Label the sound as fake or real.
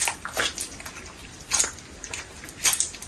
real